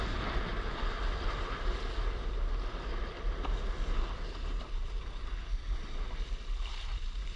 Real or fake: real